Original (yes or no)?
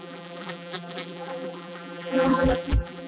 no